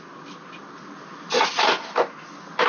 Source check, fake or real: real